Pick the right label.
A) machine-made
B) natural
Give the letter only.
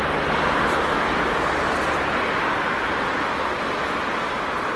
B